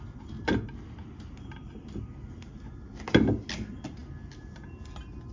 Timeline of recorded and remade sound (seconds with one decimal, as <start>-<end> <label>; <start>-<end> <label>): 0.0-5.3 recorded